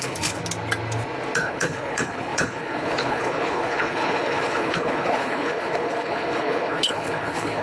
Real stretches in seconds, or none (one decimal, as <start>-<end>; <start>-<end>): 0.4-1.4

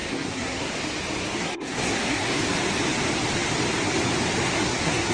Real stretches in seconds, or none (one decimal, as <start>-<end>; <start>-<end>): 0.7-1.4; 2.4-4.5

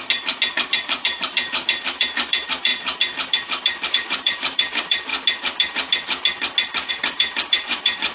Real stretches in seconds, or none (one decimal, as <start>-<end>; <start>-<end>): 0.0-0.5; 2.7-3.9; 5.1-6.9

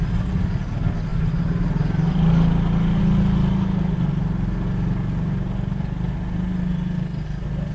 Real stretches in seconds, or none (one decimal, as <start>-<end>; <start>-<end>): 0.0-7.7

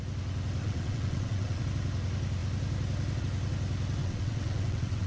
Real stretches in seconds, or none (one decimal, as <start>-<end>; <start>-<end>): 0.0-0.6; 1.6-4.0

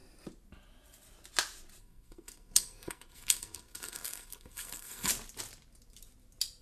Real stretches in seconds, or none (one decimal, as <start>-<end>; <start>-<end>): 0.0-1.8; 5.1-6.6

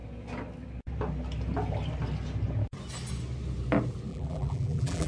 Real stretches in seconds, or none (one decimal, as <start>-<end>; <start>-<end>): 0.0-4.1